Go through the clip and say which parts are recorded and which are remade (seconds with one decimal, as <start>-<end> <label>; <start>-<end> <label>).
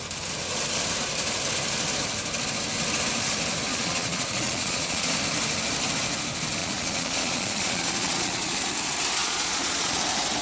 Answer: 0.0-3.7 recorded; 3.7-5.1 remade; 5.1-6.6 recorded; 6.6-8.7 remade; 8.7-9.2 recorded; 9.2-10.0 remade; 10.0-10.4 recorded